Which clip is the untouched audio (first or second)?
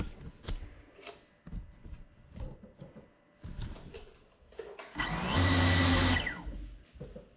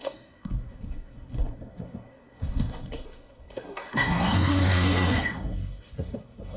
first